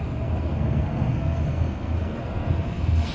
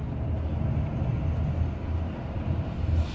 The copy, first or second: first